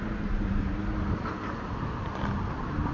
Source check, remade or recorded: recorded